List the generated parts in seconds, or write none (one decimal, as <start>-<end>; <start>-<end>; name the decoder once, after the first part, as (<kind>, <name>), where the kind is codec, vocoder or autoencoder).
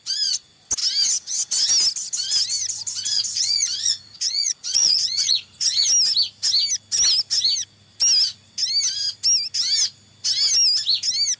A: 3.1-5.8 (vocoder, Vocos)